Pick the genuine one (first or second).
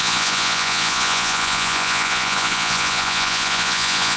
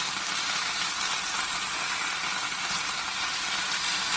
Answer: second